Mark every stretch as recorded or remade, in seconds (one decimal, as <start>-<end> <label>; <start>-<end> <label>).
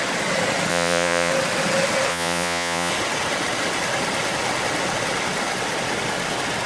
0.0-0.7 recorded; 0.7-1.3 remade; 1.3-2.1 recorded; 2.1-2.9 remade; 2.9-6.7 recorded